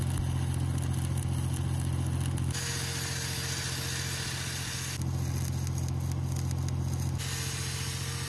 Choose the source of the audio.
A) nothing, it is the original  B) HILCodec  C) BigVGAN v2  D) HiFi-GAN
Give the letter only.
A